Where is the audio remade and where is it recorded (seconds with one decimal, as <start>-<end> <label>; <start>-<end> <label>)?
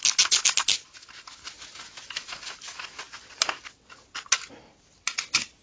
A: 0.0-5.6 recorded